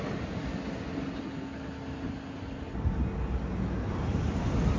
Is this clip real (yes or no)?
yes